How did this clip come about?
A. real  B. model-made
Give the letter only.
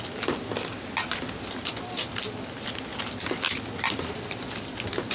A